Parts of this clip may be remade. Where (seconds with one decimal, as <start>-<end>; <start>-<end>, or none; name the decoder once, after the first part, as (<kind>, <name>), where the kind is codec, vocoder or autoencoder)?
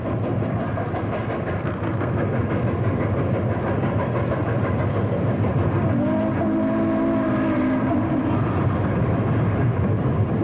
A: 1.6-2.3 (codec, SNAC)